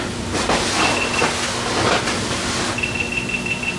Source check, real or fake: real